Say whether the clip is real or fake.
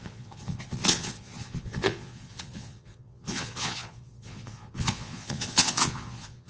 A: fake